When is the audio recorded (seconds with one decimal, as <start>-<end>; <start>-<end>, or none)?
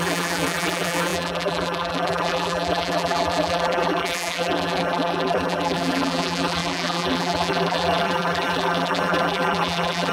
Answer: none